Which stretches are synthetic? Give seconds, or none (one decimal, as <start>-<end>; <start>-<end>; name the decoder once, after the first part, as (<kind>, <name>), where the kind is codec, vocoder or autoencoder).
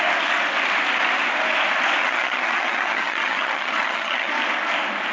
2.0-4.3 (vocoder, HiFi-GAN)